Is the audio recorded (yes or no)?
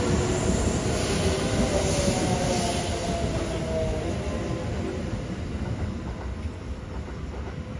yes